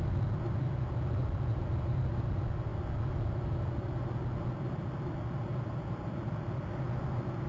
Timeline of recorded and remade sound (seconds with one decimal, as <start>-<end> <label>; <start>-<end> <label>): 0.0-7.5 recorded